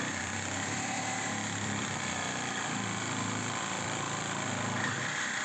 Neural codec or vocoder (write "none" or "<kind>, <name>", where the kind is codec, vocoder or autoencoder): vocoder, BigVGAN v2